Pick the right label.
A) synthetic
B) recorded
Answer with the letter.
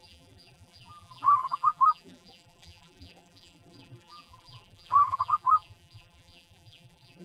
A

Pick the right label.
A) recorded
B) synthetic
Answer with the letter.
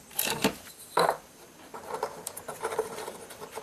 B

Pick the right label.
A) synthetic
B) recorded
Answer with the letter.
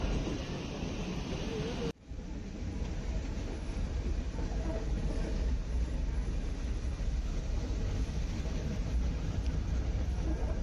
B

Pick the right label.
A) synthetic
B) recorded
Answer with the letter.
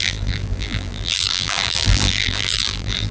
A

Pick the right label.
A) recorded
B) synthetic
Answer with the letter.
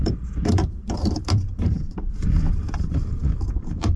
B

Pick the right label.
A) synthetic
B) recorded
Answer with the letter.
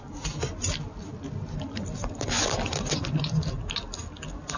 B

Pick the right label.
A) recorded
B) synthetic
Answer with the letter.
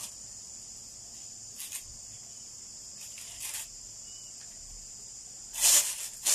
A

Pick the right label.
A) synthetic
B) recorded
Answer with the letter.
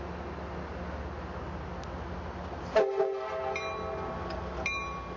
B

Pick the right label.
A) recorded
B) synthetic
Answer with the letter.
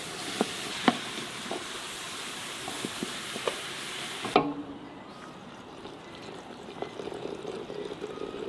B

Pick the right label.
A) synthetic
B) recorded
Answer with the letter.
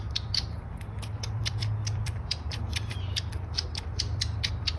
A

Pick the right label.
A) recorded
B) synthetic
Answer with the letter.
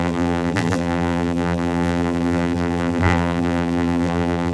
B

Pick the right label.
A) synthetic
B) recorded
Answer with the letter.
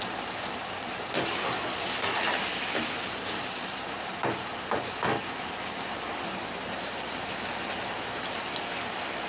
A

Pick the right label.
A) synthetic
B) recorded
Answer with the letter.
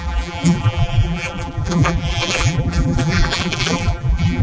A